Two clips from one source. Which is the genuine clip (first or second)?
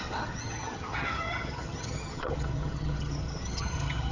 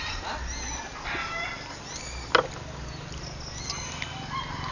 second